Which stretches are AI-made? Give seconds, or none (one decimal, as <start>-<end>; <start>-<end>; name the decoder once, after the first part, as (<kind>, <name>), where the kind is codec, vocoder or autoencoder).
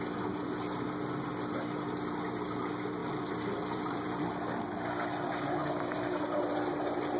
3.0-4.2 (vocoder, BigVGAN v2)